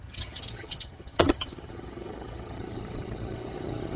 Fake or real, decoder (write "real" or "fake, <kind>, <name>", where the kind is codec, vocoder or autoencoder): fake, vocoder, HiFi-GAN